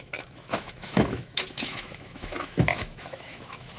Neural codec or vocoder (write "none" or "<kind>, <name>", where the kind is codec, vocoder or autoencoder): autoencoder, DAC-VAE